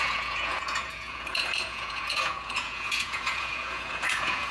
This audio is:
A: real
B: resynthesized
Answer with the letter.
B